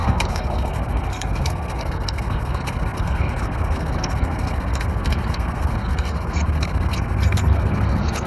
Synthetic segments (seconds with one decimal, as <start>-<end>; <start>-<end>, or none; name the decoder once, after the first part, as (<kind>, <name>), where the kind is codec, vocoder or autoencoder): 0.0-8.3 (codec, SNAC)